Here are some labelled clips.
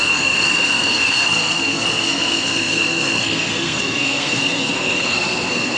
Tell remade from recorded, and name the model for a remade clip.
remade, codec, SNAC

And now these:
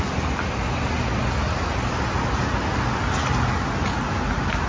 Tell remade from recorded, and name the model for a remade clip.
recorded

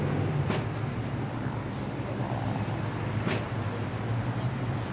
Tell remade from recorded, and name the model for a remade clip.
recorded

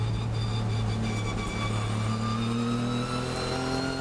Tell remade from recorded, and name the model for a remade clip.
recorded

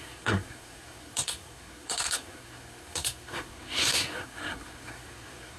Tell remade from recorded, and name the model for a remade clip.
remade, codec, SNAC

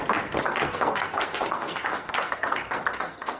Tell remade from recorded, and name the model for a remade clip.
remade, codec, SNAC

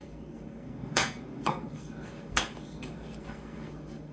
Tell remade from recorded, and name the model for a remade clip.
remade, codec, SNAC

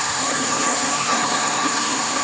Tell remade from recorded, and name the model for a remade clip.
remade, codec, SNAC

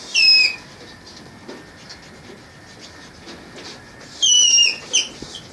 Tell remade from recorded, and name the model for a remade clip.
recorded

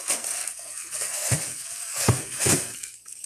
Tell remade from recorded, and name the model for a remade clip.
remade, codec, SNAC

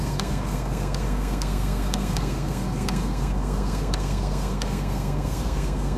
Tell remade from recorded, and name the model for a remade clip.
remade, codec, SNAC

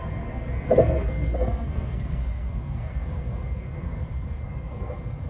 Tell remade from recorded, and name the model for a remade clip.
remade, codec, SNAC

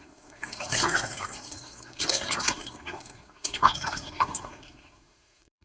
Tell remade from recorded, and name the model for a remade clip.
remade, codec, SNAC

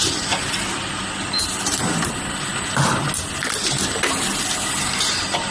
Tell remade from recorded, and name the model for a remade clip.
recorded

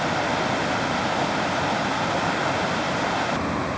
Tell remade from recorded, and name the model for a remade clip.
recorded